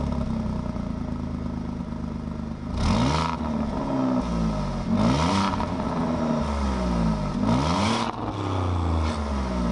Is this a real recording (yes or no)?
yes